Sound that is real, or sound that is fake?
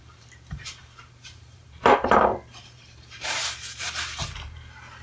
fake